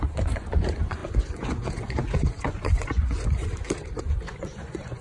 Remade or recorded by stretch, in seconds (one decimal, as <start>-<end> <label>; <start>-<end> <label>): 0.0-5.0 remade